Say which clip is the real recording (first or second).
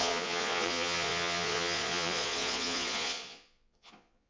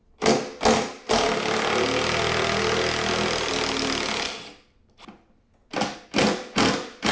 second